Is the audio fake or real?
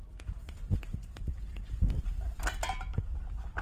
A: fake